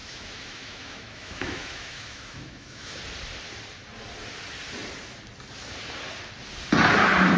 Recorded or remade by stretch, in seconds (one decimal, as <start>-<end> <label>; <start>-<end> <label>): 0.0-3.0 remade; 3.0-7.4 recorded